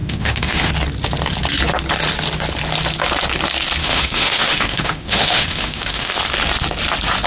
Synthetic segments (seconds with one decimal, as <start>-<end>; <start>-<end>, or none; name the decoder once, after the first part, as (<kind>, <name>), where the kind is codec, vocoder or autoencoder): 0.0-0.7 (autoencoder, DAC-VAE); 3.8-6.2